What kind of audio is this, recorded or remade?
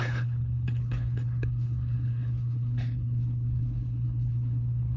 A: remade